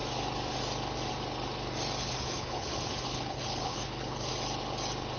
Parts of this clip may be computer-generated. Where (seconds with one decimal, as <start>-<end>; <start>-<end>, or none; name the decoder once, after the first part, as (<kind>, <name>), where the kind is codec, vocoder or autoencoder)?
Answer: 2.0-4.3 (codec, HILCodec)